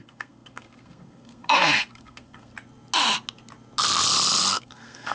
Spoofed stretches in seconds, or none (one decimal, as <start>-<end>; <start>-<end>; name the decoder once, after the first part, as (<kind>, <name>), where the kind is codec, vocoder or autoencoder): 0.0-2.5 (codec, SNAC); 4.6-5.1